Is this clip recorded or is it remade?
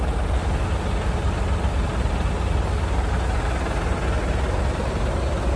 recorded